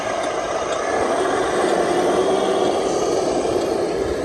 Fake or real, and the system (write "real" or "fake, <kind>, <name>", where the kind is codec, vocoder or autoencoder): fake, vocoder, BigVGAN v2